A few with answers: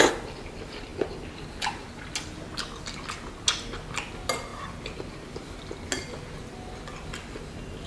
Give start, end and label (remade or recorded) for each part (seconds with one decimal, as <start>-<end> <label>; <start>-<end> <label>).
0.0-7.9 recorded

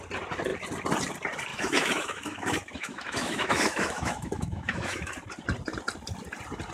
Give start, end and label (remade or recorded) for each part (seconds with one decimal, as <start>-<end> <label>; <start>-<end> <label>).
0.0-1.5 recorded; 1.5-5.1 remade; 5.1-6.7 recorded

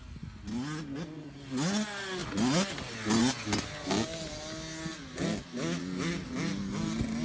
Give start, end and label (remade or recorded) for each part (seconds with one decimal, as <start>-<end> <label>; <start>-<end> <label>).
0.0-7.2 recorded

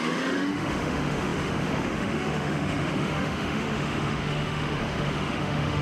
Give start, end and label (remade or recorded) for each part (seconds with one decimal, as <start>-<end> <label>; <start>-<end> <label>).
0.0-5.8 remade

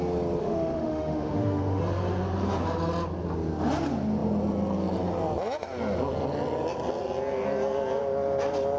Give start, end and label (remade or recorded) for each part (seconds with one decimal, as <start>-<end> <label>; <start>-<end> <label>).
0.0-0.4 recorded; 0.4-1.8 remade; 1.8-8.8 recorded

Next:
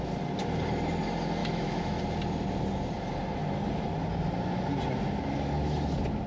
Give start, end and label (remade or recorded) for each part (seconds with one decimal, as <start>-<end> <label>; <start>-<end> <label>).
0.0-1.4 recorded; 1.4-2.0 remade; 2.0-6.3 recorded